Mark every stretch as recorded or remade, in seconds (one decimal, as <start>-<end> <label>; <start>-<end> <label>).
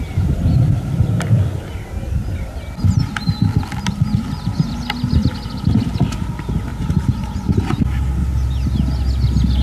0.0-6.7 recorded; 6.7-7.6 remade; 7.6-9.6 recorded